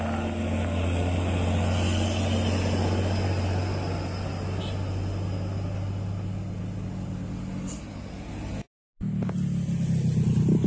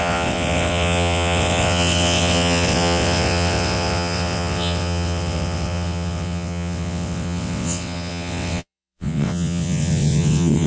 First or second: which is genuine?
first